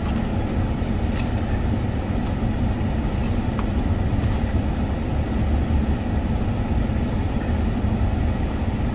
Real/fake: real